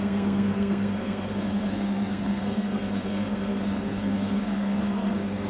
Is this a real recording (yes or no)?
no